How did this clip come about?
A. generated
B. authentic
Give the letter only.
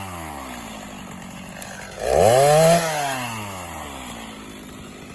B